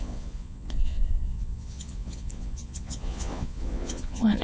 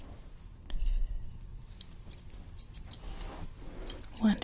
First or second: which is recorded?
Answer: second